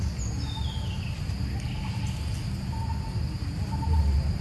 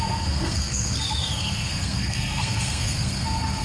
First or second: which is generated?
second